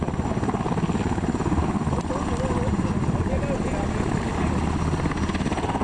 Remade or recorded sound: recorded